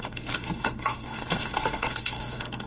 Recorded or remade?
remade